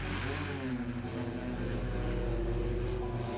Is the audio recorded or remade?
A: recorded